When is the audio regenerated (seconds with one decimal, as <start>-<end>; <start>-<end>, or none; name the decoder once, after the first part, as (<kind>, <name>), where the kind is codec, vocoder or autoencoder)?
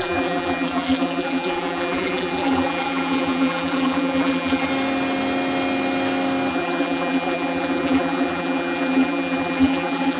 0.0-4.7 (vocoder, BigVGAN v2); 6.5-10.2